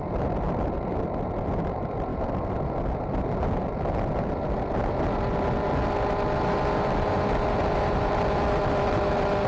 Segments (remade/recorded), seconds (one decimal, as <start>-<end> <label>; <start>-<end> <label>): 0.0-9.5 recorded